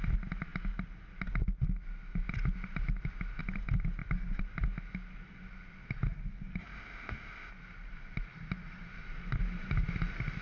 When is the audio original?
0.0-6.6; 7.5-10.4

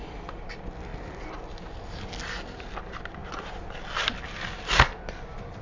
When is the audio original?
0.0-5.6

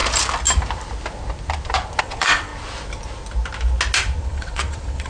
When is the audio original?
0.0-2.0; 2.5-4.2

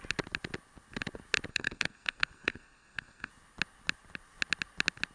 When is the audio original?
0.0-1.5; 3.3-5.1